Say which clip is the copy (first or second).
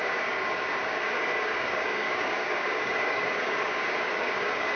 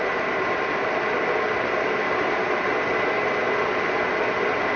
first